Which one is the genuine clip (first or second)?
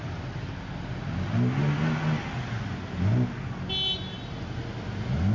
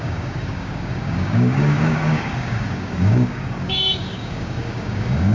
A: first